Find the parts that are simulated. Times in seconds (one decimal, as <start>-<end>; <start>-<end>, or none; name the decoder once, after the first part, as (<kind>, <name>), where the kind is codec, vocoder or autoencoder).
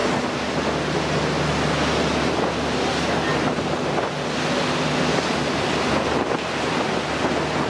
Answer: none